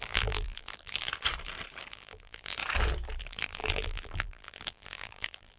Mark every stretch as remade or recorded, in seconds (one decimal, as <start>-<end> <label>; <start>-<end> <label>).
0.0-1.1 remade; 1.1-1.9 recorded; 1.9-2.6 remade; 2.6-3.2 recorded; 3.2-5.6 remade